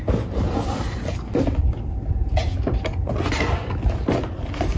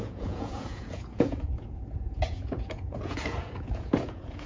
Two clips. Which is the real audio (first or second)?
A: first